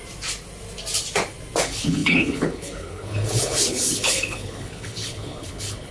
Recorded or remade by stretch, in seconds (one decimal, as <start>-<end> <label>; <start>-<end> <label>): 0.0-1.6 recorded; 1.6-5.9 remade